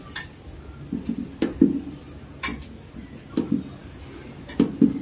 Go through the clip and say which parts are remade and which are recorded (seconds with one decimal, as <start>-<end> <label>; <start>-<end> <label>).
0.0-5.0 recorded